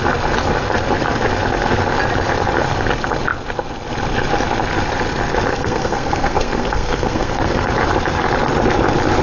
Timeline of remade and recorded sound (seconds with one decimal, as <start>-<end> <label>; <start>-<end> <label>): 0.0-5.5 recorded; 5.5-7.7 remade; 7.7-9.2 recorded